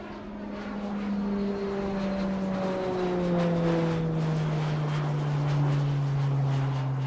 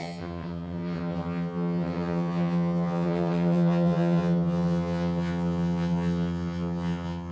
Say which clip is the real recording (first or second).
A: first